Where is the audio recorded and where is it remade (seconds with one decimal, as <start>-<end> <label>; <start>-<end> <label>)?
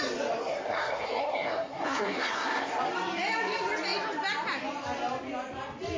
0.0-0.4 recorded; 0.4-2.8 remade; 2.8-6.0 recorded